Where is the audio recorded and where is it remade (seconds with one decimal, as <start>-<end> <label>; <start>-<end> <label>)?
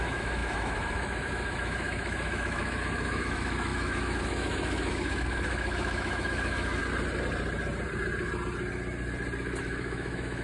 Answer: 0.0-6.8 remade; 6.8-9.6 recorded; 9.6-10.4 remade